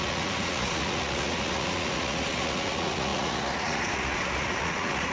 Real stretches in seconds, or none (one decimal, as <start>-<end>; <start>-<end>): none